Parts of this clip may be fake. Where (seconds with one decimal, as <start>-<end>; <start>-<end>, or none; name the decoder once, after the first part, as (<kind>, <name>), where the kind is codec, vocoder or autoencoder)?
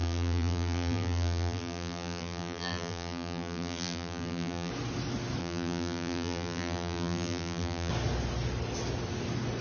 0.0-4.7 (vocoder, BigVGAN v2); 5.4-7.9